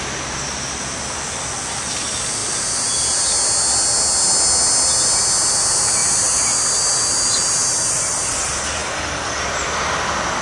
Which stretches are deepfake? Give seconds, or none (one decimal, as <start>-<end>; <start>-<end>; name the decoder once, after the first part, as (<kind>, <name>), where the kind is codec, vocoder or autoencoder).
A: 8.8-9.4 (codec, DAC)